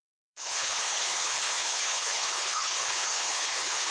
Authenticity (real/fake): fake